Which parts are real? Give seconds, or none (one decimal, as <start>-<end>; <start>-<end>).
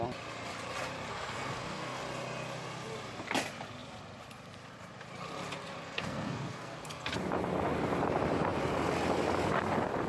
0.0-1.1; 2.0-5.8; 7.1-10.1